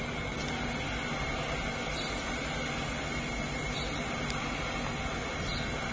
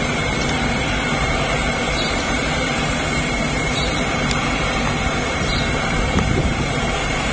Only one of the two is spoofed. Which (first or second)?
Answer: second